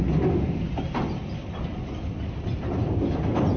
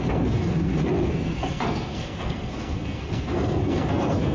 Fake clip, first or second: second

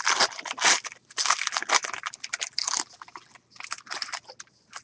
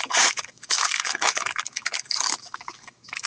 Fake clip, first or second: second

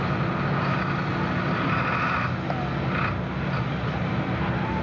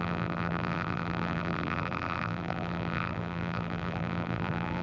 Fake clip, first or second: second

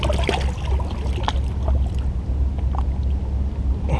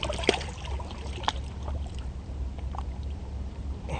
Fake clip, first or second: second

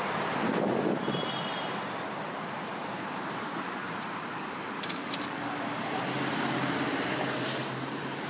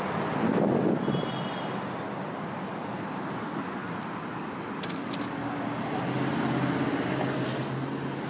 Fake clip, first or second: first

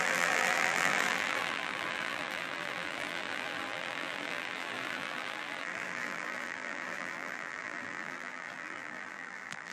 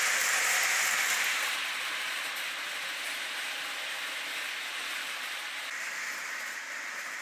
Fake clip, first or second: first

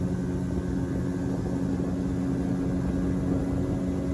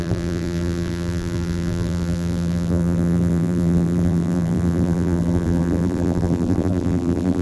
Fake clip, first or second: second